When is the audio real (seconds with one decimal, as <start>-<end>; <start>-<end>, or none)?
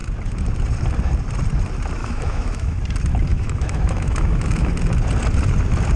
0.0-2.0; 2.8-3.3; 4.7-6.0